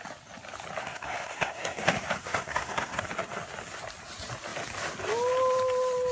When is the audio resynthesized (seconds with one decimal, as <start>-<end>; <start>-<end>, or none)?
0.8-1.8; 2.2-3.0